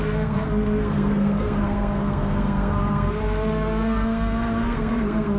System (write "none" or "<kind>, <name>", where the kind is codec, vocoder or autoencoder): codec, SNAC